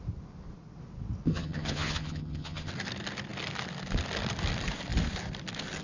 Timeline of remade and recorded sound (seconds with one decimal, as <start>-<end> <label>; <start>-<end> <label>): 0.0-1.3 recorded; 1.3-2.7 remade; 2.7-5.8 recorded